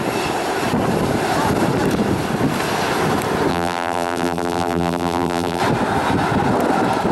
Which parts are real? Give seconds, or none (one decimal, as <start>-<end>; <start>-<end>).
0.0-3.5; 5.6-7.1

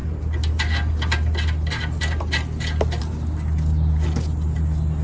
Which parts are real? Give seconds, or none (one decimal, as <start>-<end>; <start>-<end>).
0.0-5.0

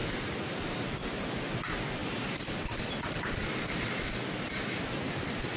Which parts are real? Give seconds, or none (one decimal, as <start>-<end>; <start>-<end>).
0.0-2.0

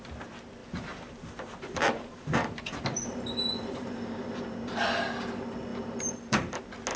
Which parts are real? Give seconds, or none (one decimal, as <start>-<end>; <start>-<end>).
0.0-0.6; 4.8-5.7; 6.6-7.0

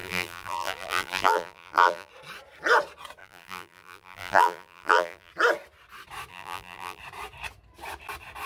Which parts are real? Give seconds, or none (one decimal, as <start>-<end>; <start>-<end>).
2.1-3.2; 5.3-6.3; 7.0-8.5

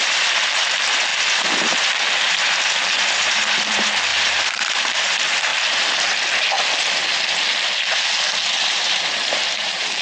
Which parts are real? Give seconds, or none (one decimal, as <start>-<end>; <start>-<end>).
5.5-8.6